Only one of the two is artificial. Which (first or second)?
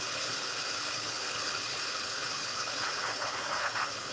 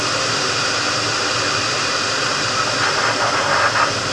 first